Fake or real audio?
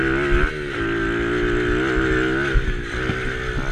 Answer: real